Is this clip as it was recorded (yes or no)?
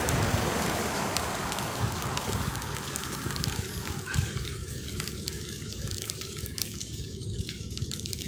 no